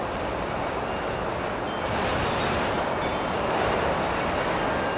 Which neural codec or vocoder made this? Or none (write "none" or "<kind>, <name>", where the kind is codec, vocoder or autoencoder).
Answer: none